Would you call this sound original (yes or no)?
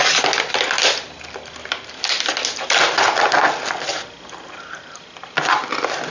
yes